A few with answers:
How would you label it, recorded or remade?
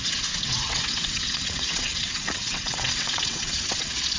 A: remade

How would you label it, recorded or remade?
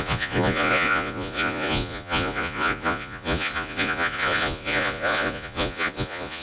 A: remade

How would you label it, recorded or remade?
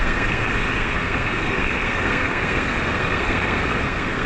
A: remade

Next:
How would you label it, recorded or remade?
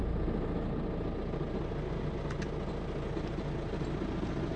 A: recorded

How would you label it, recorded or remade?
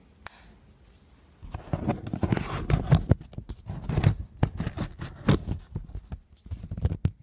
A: recorded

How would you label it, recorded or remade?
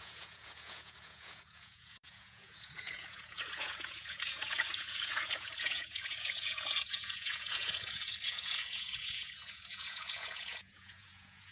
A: remade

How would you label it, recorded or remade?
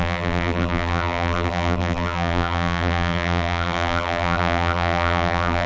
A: remade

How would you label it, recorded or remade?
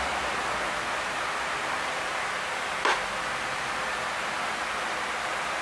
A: recorded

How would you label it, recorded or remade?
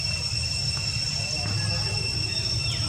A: recorded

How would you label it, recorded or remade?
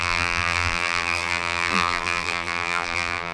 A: remade